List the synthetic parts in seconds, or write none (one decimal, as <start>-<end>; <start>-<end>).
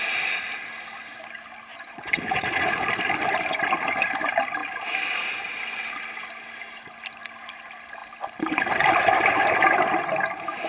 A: 1.7-2.7